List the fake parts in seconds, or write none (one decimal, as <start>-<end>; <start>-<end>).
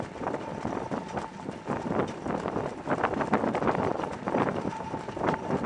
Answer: 1.3-4.7